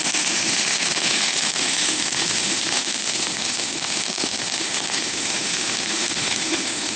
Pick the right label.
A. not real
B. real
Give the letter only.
A